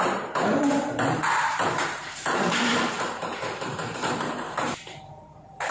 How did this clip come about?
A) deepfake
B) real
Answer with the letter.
A